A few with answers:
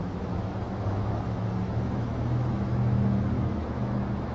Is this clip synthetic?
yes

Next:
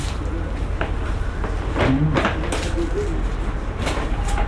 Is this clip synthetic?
no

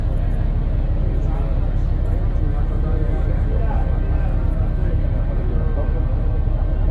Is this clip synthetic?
no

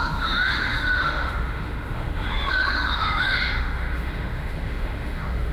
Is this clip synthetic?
yes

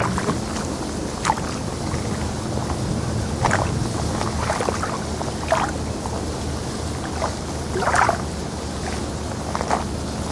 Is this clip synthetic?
no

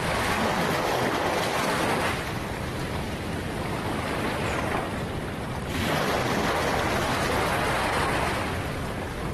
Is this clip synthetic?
no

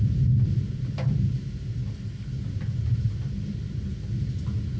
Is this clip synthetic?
no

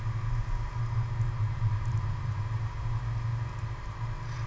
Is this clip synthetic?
no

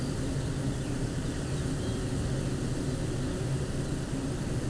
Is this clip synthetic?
no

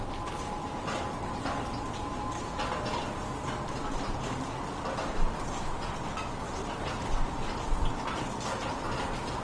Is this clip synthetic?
no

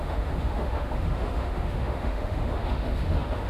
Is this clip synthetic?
yes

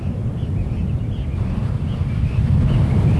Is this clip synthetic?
no